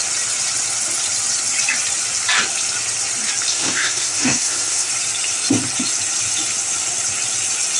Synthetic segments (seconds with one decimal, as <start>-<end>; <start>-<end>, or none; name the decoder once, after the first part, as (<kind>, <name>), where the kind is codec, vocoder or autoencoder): 3.5-4.9 (codec, SNAC)